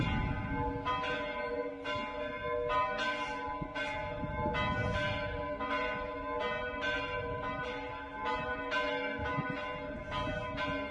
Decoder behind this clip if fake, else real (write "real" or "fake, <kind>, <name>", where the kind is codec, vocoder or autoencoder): real